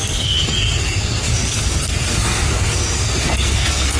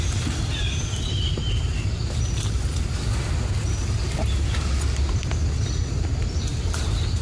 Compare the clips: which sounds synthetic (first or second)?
first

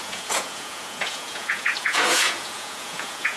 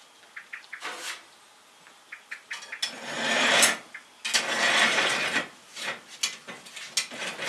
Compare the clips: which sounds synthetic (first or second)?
first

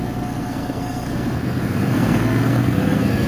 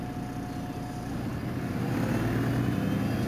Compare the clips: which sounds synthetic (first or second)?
first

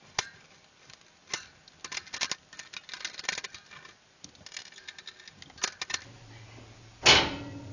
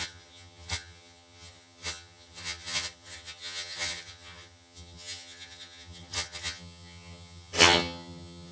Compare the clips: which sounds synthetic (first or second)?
second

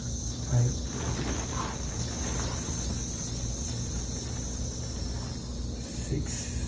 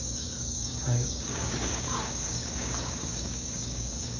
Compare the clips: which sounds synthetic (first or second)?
second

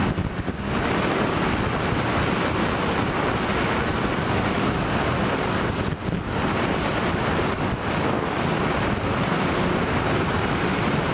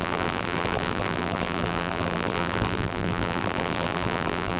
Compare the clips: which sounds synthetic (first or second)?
second